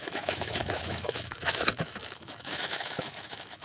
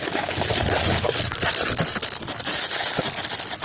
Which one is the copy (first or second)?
first